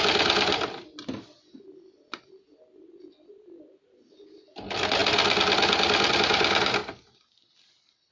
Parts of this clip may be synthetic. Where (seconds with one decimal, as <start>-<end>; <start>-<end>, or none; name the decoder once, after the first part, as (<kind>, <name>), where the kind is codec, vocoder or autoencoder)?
none